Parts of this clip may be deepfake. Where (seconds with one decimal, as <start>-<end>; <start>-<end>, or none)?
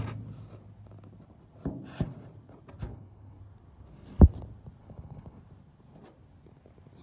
2.9-3.4; 4.8-5.4